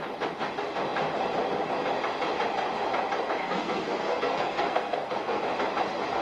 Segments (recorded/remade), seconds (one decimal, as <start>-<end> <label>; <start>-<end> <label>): 0.0-3.4 recorded; 3.4-5.4 remade; 5.4-6.2 recorded